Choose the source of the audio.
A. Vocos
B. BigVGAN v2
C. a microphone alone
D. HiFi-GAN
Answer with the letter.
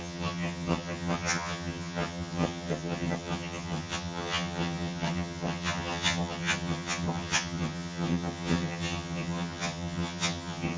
D